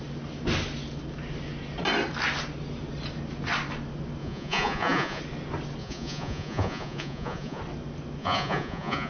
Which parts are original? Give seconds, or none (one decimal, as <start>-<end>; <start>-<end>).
0.0-4.2; 5.2-5.8; 7.6-8.2